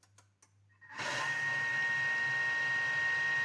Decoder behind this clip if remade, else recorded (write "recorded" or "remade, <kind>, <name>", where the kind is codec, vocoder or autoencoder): recorded